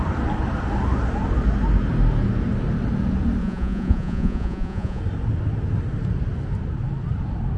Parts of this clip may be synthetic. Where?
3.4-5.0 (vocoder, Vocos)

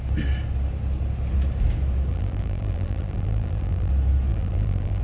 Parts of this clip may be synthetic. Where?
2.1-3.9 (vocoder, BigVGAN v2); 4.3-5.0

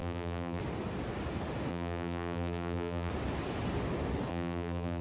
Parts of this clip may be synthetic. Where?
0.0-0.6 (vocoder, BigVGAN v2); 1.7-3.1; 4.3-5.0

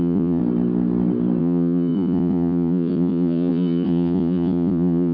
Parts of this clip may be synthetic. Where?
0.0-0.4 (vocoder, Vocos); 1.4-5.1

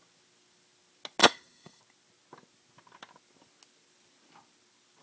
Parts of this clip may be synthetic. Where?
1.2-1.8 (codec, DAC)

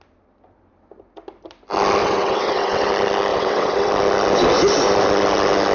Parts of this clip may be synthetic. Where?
2.0-2.9 (vocoder, WaveNeXt); 3.3-3.9